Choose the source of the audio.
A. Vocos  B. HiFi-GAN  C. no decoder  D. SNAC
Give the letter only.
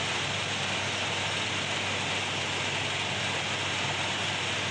C